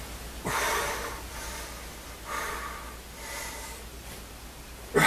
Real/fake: real